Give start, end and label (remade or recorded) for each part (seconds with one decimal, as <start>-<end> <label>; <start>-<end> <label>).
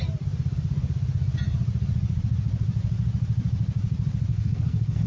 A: 0.0-4.3 recorded; 4.3-5.1 remade